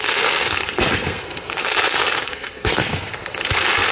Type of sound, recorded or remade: remade